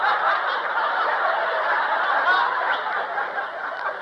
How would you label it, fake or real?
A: real